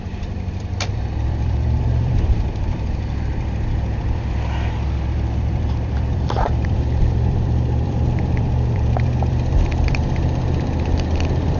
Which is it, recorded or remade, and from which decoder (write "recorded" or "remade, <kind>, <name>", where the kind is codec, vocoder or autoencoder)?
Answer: remade, vocoder, BigVGAN v2